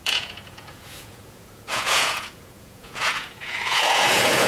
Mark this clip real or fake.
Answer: fake